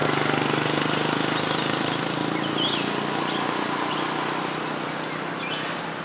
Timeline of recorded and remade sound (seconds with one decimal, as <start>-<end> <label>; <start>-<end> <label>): 0.0-6.0 recorded

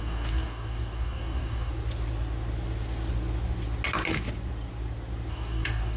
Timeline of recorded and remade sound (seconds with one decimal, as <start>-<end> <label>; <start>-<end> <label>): 0.0-1.7 remade; 1.7-5.3 recorded; 5.3-6.0 remade

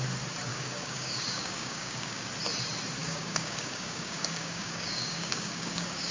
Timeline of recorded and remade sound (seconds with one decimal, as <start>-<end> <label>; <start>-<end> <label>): 0.0-0.5 recorded; 0.5-2.3 remade; 2.3-3.0 recorded; 3.0-6.1 remade

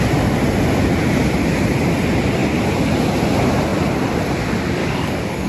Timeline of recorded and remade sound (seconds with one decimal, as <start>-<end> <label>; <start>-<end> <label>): 0.0-4.8 recorded; 4.8-5.5 remade

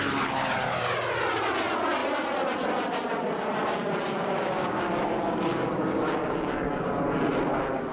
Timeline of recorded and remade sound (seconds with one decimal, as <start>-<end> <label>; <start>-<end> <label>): 0.0-4.2 recorded; 4.2-7.0 remade; 7.0-7.9 recorded

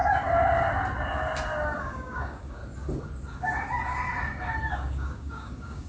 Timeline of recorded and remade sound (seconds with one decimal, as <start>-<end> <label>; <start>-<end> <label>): 0.0-1.8 recorded; 1.8-2.6 remade; 2.6-4.7 recorded; 4.7-5.9 remade